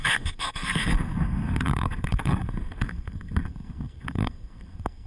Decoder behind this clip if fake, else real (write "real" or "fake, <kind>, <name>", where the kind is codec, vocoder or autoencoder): fake, codec, SNAC